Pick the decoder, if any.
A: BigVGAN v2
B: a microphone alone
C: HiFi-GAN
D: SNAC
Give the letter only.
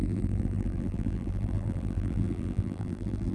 A